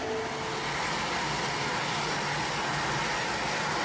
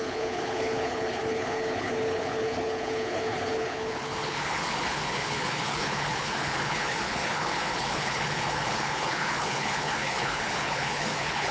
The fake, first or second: second